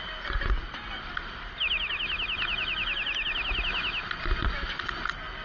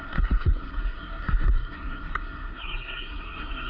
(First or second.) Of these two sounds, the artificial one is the second